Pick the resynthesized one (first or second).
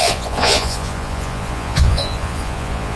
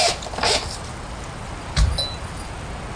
first